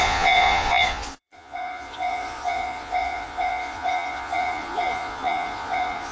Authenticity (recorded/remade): remade